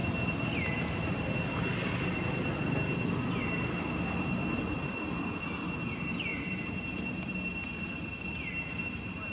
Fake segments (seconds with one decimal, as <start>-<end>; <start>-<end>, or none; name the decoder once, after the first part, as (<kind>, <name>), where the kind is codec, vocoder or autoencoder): 6.3-7.0 (vocoder, BigVGAN v2)

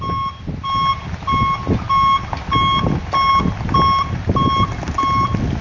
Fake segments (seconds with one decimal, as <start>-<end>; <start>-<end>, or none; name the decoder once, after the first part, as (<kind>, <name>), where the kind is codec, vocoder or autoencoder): none

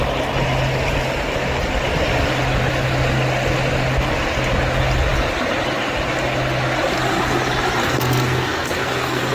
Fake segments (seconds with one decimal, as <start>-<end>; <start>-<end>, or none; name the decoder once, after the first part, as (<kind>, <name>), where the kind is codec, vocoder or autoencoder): 7.8-9.3 (codec, SNAC)

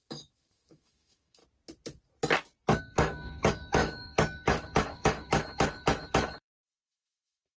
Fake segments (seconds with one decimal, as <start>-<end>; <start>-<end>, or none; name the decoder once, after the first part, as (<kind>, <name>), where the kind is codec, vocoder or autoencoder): 0.0-1.4 (autoencoder, DAC-VAE); 2.8-7.6

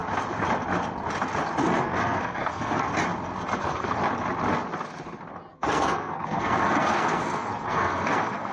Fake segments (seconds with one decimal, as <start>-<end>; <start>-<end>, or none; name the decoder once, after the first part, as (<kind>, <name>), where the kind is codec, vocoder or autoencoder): 1.8-2.9 (codec, SNAC); 3.6-4.0; 5.5-8.5

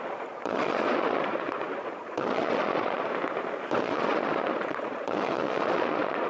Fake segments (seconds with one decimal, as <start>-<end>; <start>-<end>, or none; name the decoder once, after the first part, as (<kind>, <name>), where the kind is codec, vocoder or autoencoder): 0.0-3.1 (vocoder, Vocos); 3.8-6.3

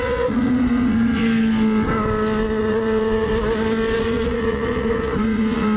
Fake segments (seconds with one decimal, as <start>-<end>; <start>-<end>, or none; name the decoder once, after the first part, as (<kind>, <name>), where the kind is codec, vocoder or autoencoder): 0.0-1.2 (vocoder, Vocos); 2.6-3.3; 4.0-5.8